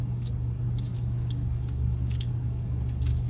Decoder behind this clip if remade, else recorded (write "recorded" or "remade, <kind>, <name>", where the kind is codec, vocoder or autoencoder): remade, codec, DAC